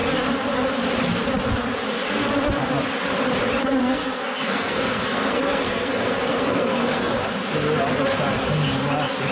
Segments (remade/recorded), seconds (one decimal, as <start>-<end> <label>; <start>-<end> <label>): 0.0-3.8 recorded; 3.8-7.1 remade; 7.1-9.3 recorded